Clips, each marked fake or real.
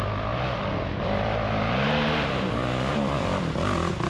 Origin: real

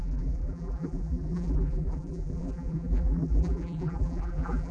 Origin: fake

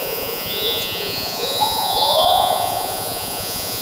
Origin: fake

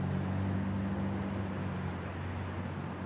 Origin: real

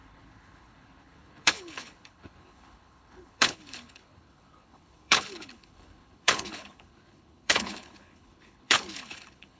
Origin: fake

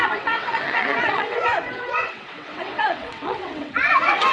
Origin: fake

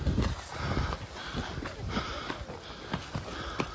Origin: real